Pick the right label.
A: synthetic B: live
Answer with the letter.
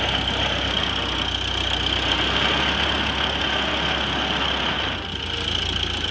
B